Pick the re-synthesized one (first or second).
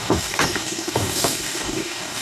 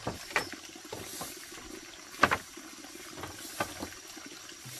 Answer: first